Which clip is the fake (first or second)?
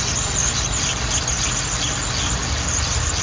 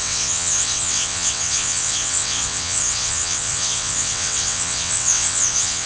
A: second